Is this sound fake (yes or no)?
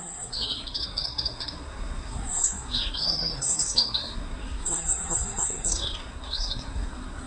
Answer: yes